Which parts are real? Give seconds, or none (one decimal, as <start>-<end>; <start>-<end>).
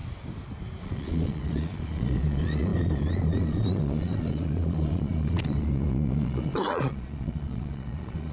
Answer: 0.0-0.8